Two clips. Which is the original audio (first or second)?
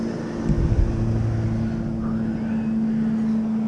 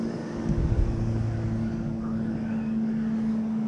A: first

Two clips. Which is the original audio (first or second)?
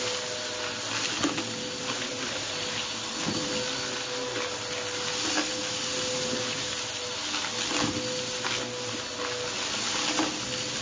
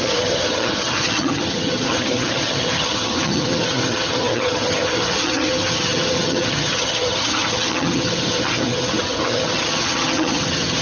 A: first